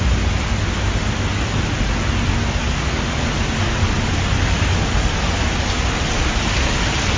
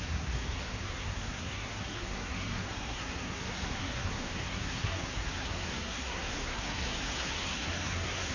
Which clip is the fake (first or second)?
second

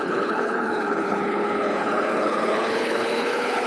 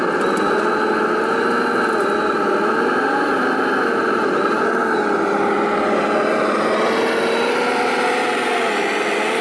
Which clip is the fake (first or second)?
first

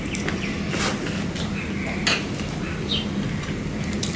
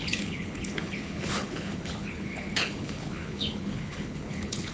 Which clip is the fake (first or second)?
second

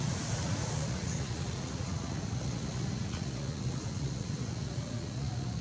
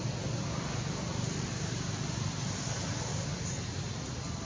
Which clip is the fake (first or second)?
first